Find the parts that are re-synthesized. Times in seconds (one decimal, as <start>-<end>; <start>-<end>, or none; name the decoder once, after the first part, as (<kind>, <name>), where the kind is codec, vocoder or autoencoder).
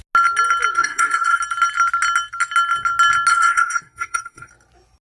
0.7-1.4 (codec, SNAC); 3.3-4.5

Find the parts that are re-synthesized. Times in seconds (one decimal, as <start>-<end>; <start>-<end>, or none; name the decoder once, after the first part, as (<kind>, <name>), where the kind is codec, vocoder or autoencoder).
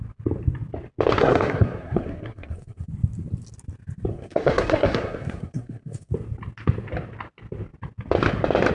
1.2-2.9 (codec, SNAC); 4.1-6.1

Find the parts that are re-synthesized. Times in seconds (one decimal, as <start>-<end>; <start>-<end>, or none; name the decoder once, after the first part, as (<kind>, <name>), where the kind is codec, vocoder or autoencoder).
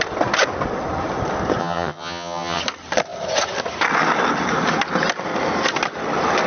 1.6-2.6 (vocoder, HiFi-GAN)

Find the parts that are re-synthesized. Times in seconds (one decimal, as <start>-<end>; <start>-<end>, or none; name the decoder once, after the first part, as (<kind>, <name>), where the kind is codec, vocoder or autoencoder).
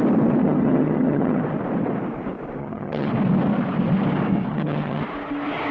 0.4-1.4 (vocoder, HiFi-GAN); 2.6-3.1; 4.5-5.0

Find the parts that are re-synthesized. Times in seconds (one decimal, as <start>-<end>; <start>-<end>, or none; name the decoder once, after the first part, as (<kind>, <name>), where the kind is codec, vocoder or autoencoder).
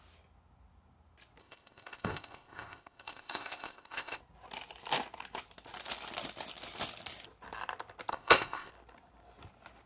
1.4-4.2 (codec, ZipCodec); 8.1-8.7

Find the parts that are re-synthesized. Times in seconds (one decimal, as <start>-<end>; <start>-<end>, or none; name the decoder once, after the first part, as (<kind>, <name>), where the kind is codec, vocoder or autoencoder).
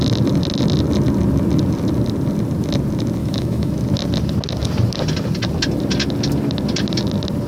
3.2-3.7 (autoencoder, DAC-VAE)